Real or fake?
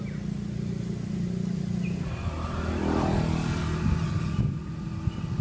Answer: real